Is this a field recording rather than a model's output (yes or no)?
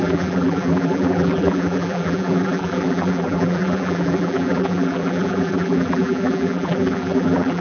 no